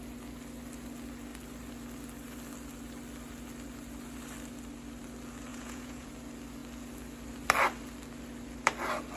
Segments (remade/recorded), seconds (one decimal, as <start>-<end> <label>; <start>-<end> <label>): 0.0-5.5 recorded; 5.5-6.1 remade; 6.1-9.2 recorded